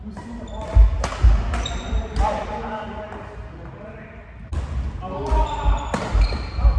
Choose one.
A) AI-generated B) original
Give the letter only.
B